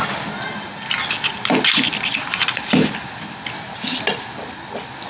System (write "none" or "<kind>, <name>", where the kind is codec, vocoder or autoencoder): none